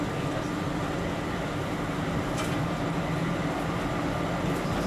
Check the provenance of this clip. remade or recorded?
recorded